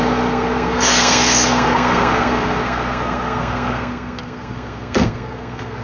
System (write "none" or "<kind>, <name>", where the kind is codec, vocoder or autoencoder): codec, SNAC